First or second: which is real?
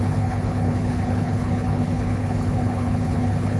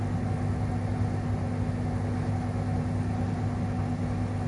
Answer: second